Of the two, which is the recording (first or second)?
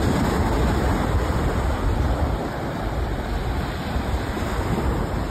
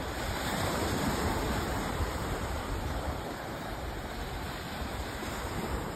first